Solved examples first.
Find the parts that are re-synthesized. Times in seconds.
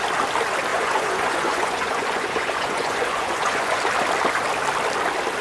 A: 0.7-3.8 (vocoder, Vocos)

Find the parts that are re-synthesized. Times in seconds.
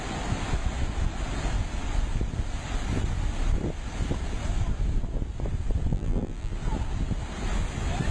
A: 5.9-6.5 (vocoder, BigVGAN v2)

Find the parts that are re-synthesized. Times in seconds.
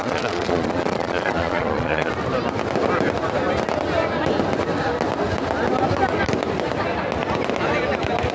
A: 0.0-2.1 (vocoder, Vocos)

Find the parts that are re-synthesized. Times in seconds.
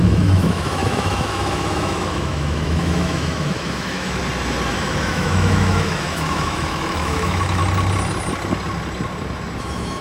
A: 0.0-4.2 (autoencoder, DAC-VAE); 4.7-7.6; 9.6-10.0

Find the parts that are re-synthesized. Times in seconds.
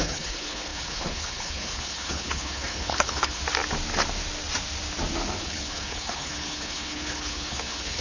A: 0.0-3.4 (codec, HILCodec); 5.4-8.0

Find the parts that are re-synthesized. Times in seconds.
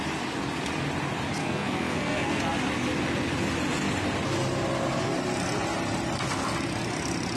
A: 1.4-2.4 (codec, SNAC)